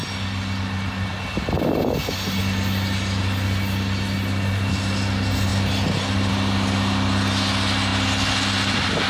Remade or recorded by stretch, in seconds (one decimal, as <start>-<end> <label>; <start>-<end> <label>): 0.0-9.1 recorded